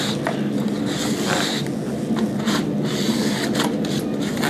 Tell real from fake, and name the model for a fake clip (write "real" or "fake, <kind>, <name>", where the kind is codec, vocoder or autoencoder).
real